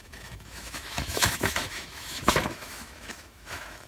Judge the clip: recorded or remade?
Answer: remade